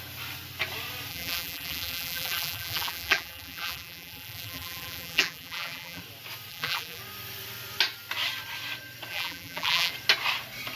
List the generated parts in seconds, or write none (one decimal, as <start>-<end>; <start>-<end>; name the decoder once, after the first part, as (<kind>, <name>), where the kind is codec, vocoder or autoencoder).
1.1-6.0 (vocoder, BigVGAN v2); 6.5-7.0; 9.1-9.9